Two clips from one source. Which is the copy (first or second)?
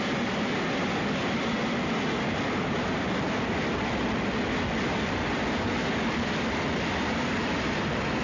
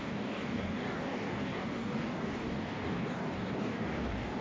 second